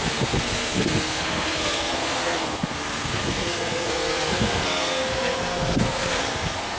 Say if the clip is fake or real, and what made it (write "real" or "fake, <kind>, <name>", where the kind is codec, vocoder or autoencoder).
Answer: fake, codec, SNAC